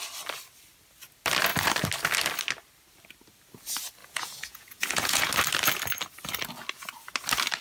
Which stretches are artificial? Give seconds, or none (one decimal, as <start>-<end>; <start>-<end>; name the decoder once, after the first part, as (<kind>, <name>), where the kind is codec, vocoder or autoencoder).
4.0-5.3 (vocoder, Vocos)